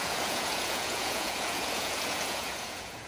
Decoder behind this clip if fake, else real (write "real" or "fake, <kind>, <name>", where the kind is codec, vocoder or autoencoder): fake, vocoder, Vocos